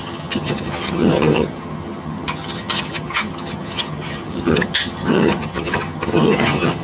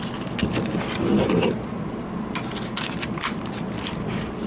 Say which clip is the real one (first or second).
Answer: second